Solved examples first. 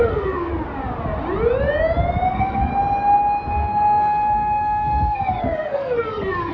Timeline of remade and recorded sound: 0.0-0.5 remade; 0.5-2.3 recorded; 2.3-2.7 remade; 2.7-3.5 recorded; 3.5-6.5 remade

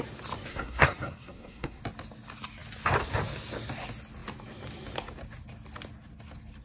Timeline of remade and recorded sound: 0.0-0.5 recorded; 0.5-1.8 remade; 1.8-6.6 recorded